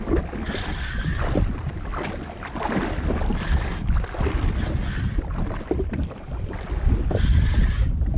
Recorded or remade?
recorded